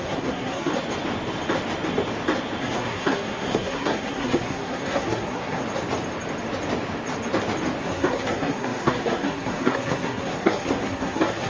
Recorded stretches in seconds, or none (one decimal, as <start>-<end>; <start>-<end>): 0.7-2.6; 5.6-7.8